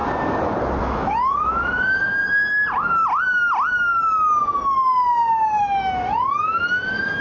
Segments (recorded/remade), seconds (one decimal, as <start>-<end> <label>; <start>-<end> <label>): 0.0-0.8 recorded; 0.8-2.2 remade; 2.2-5.6 recorded; 5.6-7.2 remade